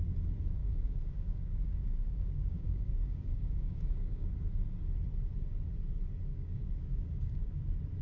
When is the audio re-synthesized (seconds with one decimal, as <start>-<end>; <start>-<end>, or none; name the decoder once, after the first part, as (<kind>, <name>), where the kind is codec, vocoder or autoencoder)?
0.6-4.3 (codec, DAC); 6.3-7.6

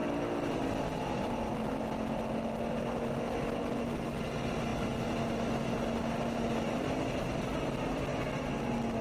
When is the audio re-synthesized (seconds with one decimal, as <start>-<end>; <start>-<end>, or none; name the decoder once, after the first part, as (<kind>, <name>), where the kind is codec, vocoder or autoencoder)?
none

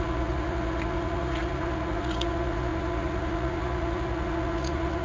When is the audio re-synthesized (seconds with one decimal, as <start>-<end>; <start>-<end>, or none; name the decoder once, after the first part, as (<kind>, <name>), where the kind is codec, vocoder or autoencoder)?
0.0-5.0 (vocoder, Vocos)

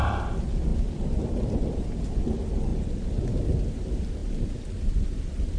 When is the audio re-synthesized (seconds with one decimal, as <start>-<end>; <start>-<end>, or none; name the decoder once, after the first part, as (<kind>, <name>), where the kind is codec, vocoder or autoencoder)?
none